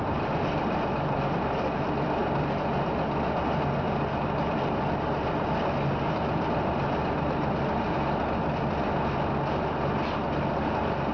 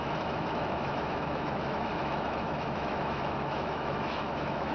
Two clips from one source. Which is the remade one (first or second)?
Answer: second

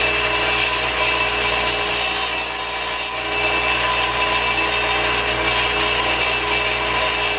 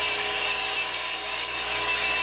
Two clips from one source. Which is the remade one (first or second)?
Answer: second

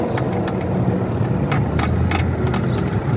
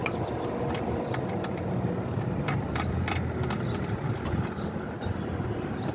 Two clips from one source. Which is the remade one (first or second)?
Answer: second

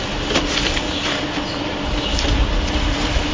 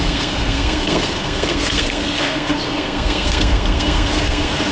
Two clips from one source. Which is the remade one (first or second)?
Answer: second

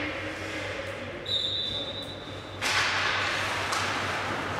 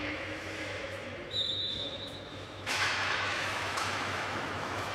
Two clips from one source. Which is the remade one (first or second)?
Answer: second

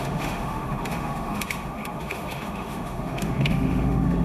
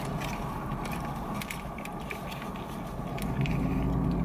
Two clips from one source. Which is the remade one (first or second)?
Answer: first